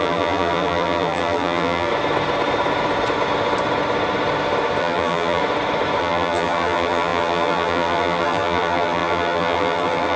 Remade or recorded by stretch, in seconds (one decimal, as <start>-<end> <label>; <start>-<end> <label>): 0.0-1.9 remade; 1.9-4.8 recorded; 4.8-5.4 remade; 5.4-6.0 recorded; 6.0-10.2 remade